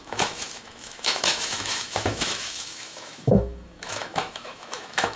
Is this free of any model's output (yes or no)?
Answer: no